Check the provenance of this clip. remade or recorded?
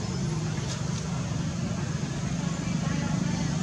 recorded